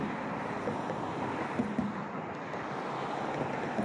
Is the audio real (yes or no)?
yes